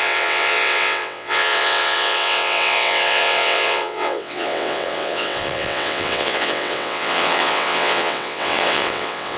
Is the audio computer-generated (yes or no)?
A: yes